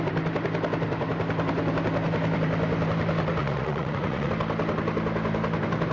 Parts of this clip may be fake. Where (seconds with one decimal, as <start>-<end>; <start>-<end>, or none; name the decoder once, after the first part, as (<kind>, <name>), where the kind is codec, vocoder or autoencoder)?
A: 3.4-4.3 (vocoder, Vocos)